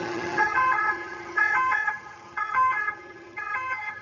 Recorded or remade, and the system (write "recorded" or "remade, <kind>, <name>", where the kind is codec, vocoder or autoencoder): remade, vocoder, HiFi-GAN